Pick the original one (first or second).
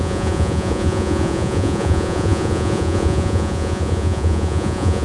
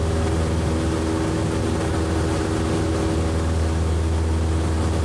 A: second